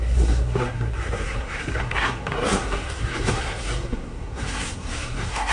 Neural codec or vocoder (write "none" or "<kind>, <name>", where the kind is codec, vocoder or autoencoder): codec, SNAC